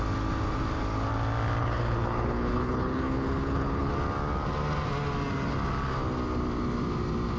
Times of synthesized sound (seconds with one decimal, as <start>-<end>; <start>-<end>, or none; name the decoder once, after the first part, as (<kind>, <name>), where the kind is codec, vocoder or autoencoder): 1.6-3.9 (codec, HILCodec)